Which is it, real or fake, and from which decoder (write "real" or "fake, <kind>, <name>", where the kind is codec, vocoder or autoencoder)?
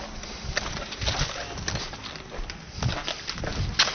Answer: real